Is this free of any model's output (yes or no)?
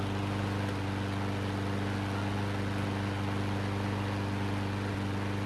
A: yes